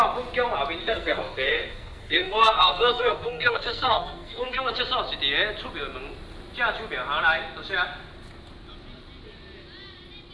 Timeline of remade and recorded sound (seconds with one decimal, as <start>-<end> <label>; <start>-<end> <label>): 0.0-0.8 recorded; 0.8-4.8 remade; 4.8-10.3 recorded